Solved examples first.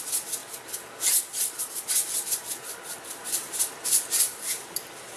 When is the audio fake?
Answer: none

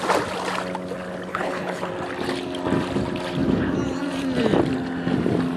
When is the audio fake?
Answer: 1.3-1.9

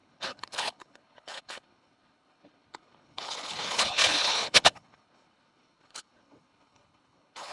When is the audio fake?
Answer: 0.0-7.5

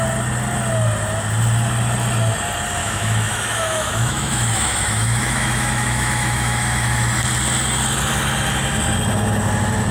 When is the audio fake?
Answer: 2.8-7.1